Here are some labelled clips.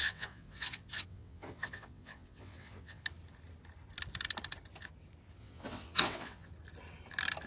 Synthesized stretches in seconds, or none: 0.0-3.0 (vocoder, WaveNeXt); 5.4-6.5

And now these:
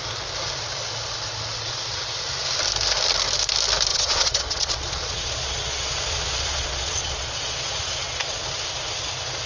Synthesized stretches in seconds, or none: 3.9-8.4 (vocoder, Vocos)

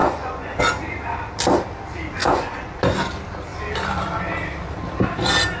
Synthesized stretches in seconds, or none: 0.0-0.6 (vocoder, Vocos); 2.2-2.8

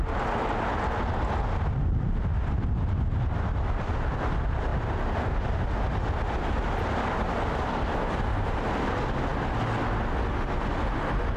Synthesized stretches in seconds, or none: none

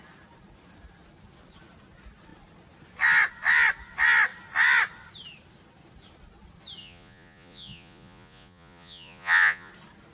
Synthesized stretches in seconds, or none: 6.8-9.7 (vocoder, Vocos)

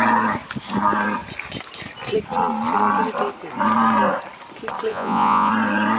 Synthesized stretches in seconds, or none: 4.9-5.5 (vocoder, Vocos)

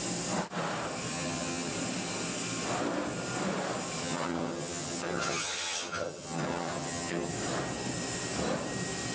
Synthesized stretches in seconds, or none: 1.1-1.7 (vocoder, HiFi-GAN); 4.0-7.3